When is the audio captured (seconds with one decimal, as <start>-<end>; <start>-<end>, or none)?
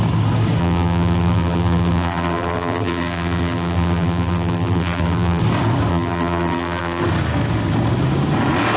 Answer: 0.0-0.6; 5.4-5.9; 7.0-8.8